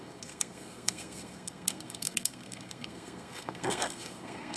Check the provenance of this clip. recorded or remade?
remade